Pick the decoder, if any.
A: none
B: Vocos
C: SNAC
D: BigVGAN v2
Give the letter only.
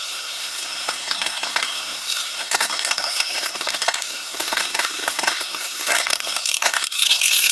C